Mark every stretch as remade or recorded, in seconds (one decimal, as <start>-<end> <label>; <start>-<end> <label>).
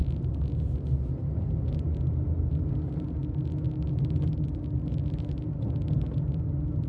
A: 0.0-6.9 recorded